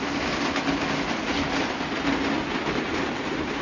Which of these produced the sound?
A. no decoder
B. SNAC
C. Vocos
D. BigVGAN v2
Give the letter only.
A